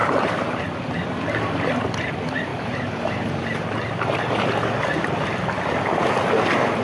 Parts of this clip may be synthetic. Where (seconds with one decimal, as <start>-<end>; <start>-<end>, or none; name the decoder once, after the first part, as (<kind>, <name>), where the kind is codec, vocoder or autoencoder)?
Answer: 0.0-0.6 (vocoder, BigVGAN v2); 2.5-4.4